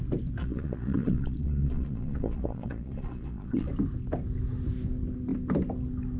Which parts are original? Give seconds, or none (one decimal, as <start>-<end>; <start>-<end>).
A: 0.0-0.4; 3.7-6.2